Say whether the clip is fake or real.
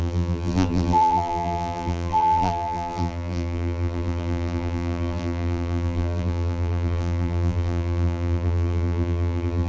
fake